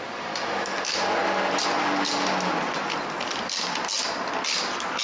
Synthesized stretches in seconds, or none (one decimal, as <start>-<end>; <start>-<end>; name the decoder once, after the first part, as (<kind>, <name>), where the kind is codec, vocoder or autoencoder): none